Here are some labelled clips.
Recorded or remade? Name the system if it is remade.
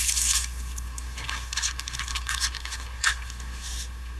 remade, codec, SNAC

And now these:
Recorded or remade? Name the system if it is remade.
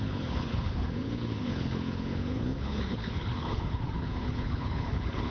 remade, codec, HILCodec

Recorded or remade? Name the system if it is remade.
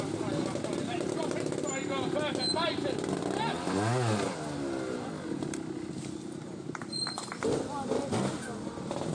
recorded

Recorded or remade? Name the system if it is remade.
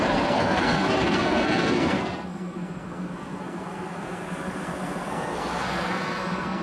remade, codec, SNAC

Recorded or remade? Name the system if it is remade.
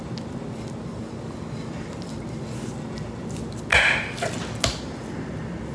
recorded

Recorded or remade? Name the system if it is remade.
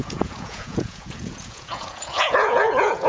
remade, vocoder, Vocos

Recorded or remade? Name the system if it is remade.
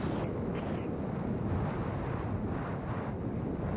recorded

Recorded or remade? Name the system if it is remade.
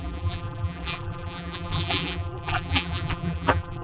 remade, vocoder, BigVGAN v2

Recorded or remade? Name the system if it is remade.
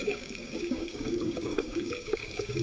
remade, codec, DAC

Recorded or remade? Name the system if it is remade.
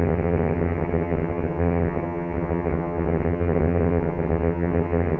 remade, vocoder, HiFi-GAN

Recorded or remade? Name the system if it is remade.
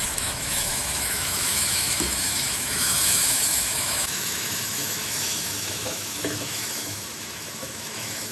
remade, autoencoder, DAC-VAE